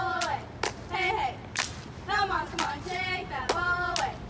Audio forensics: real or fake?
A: real